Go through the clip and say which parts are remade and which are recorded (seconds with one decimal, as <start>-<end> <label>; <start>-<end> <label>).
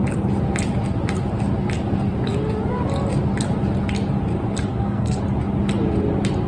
0.0-4.7 recorded; 4.7-5.2 remade; 5.2-6.5 recorded